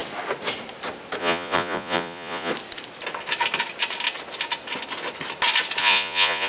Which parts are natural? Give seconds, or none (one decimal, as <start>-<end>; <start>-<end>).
0.0-1.2; 2.5-5.8